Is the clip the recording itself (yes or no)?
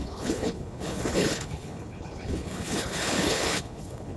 no